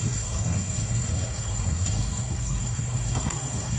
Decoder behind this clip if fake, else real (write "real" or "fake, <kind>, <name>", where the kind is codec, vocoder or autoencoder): fake, codec, SNAC